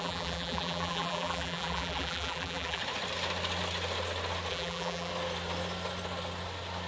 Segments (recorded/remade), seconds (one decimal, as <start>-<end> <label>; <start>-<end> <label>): 0.0-2.8 remade; 2.8-4.5 recorded; 4.5-5.1 remade; 5.1-6.9 recorded